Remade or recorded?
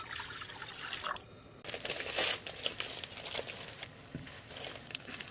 recorded